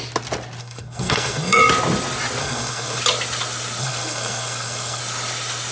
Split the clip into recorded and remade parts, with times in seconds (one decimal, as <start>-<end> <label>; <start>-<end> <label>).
0.0-0.6 recorded; 0.6-1.6 remade; 1.6-2.4 recorded; 2.4-3.0 remade; 3.0-3.8 recorded; 3.8-5.0 remade; 5.0-5.7 recorded